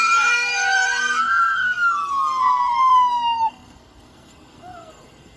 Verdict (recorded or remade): remade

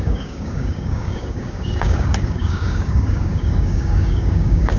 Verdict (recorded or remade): remade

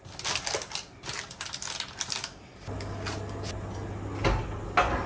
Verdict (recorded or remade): recorded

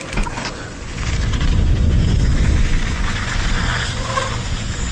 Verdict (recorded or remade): remade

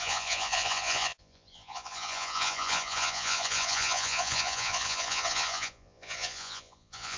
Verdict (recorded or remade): remade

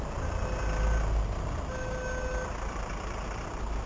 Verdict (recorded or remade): recorded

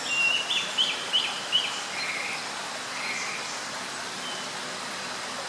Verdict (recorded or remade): recorded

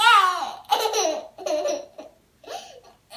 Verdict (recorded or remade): recorded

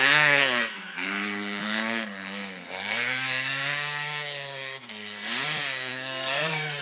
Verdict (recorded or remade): remade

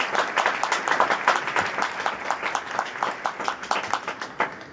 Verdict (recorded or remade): recorded